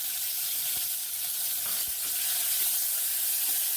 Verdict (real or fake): real